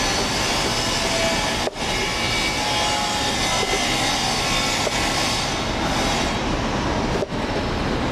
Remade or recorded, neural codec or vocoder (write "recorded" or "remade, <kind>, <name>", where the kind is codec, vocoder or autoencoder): recorded